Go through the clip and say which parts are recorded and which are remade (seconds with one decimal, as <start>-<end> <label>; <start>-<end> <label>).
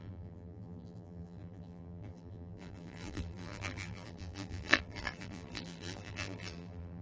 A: 0.0-7.0 remade